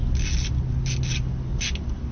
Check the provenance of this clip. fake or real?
real